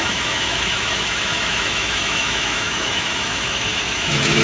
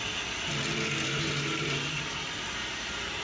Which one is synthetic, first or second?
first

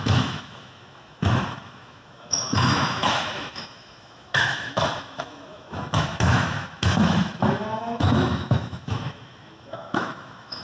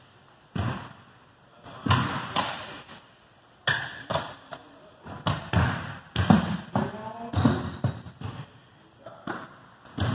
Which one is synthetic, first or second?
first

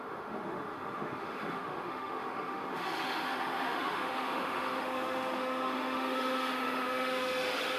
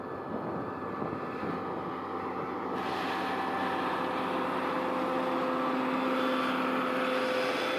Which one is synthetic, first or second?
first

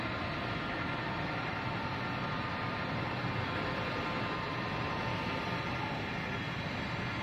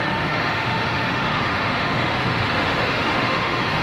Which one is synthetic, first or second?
second